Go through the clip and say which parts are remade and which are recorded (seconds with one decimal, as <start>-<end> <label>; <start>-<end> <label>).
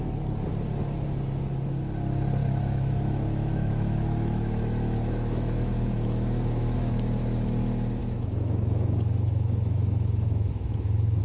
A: 0.0-2.4 recorded; 2.4-7.2 remade; 7.2-8.0 recorded; 8.0-11.2 remade